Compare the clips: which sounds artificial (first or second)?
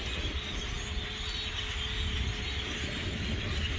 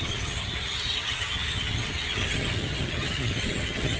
second